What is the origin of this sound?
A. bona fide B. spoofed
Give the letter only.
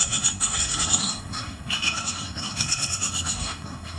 B